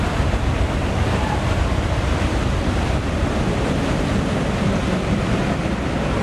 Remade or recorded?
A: remade